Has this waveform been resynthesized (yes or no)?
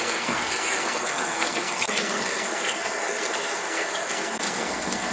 yes